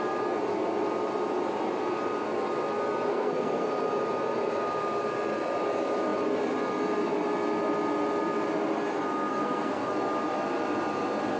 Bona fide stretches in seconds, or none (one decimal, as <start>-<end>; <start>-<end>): 0.0-3.1; 3.7-9.3; 9.9-11.4

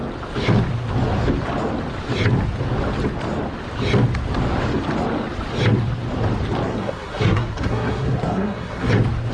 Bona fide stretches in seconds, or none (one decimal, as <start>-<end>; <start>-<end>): 0.0-6.7; 8.9-9.3

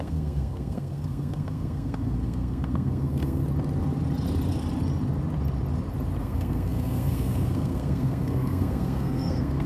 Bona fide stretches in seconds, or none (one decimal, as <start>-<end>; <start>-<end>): 3.4-6.2

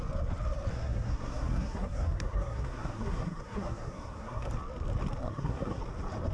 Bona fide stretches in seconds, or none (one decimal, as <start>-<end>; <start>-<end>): 0.0-0.7; 4.5-5.2; 5.8-6.3

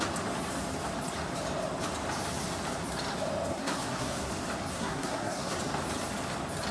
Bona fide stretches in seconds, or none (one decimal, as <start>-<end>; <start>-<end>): 0.0-3.5; 4.3-4.7; 5.6-6.7

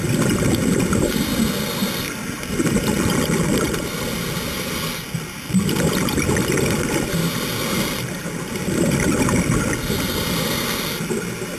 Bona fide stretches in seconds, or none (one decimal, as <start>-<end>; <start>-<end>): 0.0-11.6